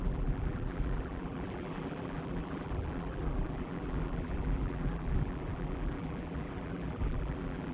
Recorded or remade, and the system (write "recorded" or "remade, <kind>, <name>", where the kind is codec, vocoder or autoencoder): remade, vocoder, BigVGAN v2